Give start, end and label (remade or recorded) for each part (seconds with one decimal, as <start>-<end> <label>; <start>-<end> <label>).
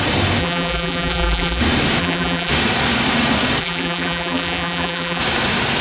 0.0-0.4 recorded; 0.4-1.6 remade; 1.6-2.0 recorded; 2.0-2.5 remade; 2.5-3.6 recorded; 3.6-5.2 remade; 5.2-5.8 recorded